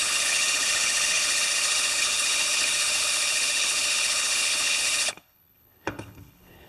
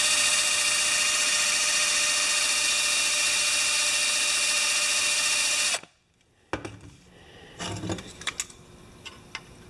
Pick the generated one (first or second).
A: first